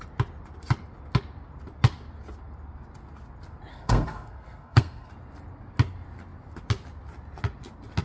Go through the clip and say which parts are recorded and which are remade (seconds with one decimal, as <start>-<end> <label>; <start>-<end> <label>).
0.0-3.7 recorded; 3.7-5.1 remade; 5.1-8.0 recorded